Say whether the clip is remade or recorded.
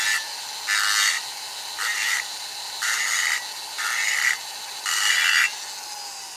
recorded